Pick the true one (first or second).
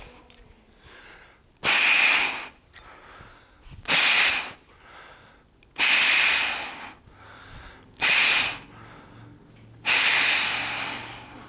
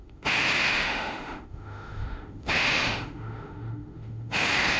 first